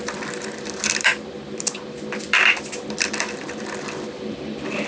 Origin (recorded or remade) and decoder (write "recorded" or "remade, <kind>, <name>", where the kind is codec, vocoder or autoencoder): remade, vocoder, BigVGAN v2